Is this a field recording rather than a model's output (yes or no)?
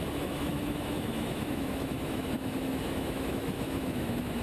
no